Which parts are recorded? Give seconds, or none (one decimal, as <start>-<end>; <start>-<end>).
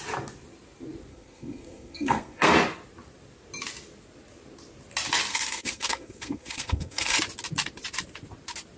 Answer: 0.0-1.1; 2.5-5.3; 7.2-8.8